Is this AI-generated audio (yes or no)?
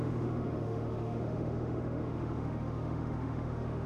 yes